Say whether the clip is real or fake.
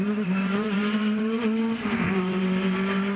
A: fake